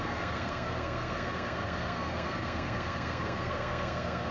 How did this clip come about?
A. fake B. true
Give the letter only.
A